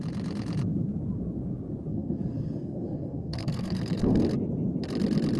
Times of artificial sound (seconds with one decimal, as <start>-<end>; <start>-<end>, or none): 1.9-4.2